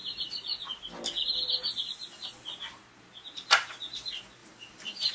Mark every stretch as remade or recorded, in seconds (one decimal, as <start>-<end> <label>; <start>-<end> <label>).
0.0-4.4 recorded; 4.4-5.1 remade